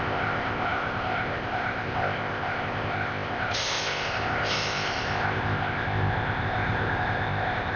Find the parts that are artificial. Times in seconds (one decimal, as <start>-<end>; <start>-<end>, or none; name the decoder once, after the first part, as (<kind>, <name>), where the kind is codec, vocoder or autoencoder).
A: 0.0-7.8 (codec, ZipCodec)